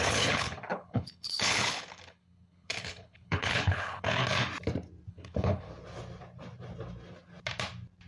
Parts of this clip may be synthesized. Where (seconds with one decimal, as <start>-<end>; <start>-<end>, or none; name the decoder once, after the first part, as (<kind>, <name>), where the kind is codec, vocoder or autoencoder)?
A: 0.0-4.2 (codec, HILCodec); 5.1-5.7